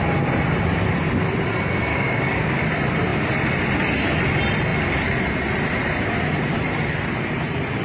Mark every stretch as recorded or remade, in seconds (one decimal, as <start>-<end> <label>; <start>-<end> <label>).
0.0-1.9 recorded; 1.9-2.7 remade; 2.7-7.8 recorded